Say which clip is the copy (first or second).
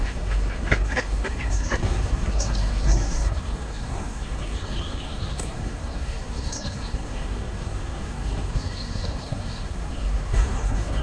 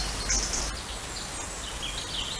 first